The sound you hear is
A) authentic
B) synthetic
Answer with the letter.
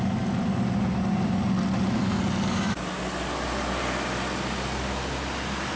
A